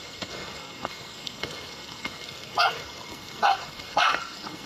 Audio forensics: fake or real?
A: fake